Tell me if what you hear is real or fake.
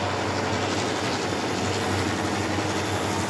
real